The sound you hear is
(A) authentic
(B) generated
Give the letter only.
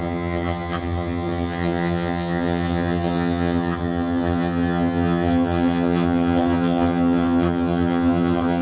B